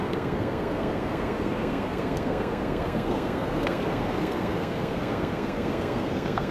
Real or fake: fake